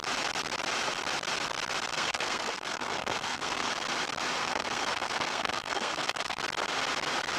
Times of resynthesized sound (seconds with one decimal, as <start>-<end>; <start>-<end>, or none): 1.9-3.7; 4.4-6.4